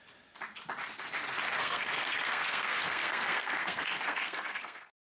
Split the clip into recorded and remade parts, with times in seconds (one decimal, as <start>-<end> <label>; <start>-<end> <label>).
0.0-1.6 recorded; 1.6-5.1 remade